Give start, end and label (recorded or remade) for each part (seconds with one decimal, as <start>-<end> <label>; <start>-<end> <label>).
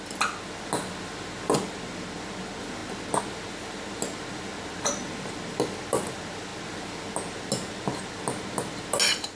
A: 0.0-9.4 recorded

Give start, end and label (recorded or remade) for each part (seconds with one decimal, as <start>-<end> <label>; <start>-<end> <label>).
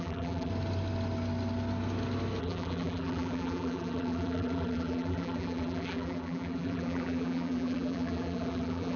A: 0.0-0.5 remade; 0.5-2.4 recorded; 2.4-9.0 remade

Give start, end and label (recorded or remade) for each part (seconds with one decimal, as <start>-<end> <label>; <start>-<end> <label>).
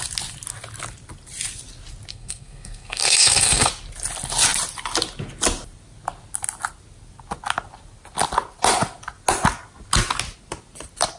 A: 0.0-2.1 recorded; 2.1-3.7 remade; 3.7-11.2 recorded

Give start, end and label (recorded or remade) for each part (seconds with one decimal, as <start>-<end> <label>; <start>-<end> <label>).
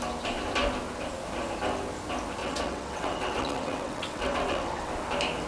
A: 0.0-2.4 recorded; 2.4-4.9 remade; 4.9-5.5 recorded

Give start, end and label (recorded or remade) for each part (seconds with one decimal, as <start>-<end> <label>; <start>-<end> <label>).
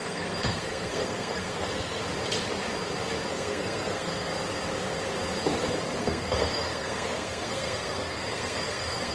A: 0.0-2.0 remade; 2.0-3.3 recorded; 3.3-4.3 remade; 4.3-6.0 recorded; 6.0-9.1 remade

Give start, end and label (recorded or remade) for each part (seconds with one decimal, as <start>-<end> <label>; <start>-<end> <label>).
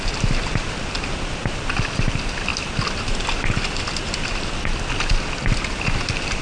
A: 0.0-6.4 recorded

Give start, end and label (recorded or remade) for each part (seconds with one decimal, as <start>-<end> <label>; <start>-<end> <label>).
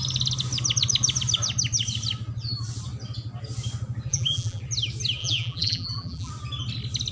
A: 0.0-4.1 recorded; 4.1-4.6 remade; 4.6-5.2 recorded; 5.2-6.3 remade; 6.3-7.1 recorded